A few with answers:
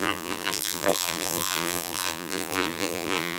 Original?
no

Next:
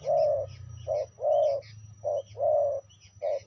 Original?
yes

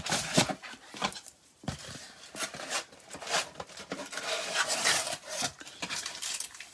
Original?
no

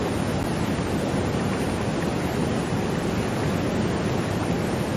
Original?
yes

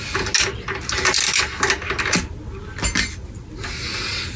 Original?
yes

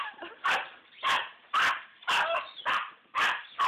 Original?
no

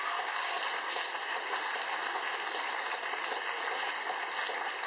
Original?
yes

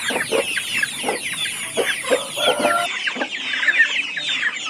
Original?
yes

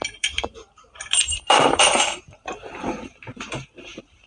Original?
no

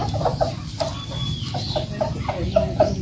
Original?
no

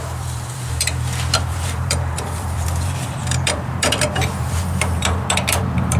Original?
no